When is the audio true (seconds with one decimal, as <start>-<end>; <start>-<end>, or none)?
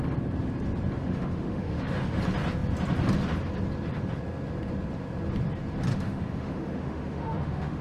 0.0-1.0; 2.2-5.9